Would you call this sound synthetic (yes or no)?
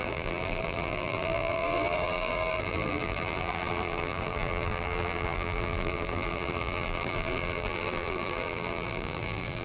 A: yes